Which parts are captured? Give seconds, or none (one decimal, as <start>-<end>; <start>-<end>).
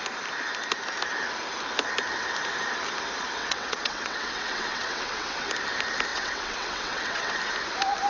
0.0-3.4; 5.5-6.1; 7.4-8.1